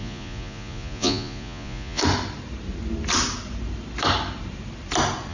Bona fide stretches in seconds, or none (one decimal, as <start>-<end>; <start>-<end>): 2.0-5.3